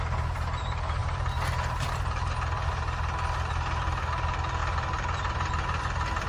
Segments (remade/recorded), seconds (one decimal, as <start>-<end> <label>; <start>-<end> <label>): 0.0-1.0 recorded; 1.0-2.7 remade; 2.7-4.6 recorded; 4.6-5.5 remade; 5.5-6.3 recorded